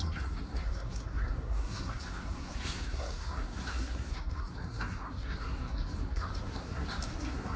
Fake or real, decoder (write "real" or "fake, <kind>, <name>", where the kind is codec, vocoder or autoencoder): fake, codec, SNAC